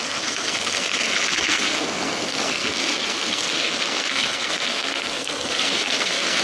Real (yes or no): no